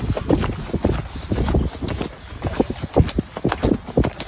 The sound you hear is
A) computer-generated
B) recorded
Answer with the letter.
B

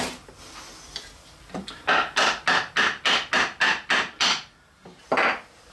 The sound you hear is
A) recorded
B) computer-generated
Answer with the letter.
A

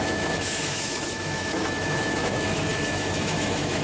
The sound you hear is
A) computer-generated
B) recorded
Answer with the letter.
A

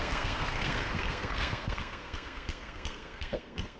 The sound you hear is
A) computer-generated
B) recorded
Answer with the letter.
A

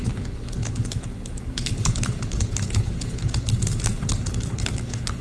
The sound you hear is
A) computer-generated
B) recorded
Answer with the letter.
A